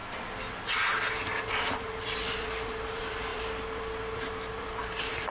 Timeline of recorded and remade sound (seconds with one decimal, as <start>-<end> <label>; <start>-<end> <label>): 0.0-1.5 recorded; 1.5-5.3 remade